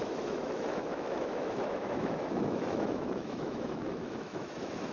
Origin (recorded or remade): remade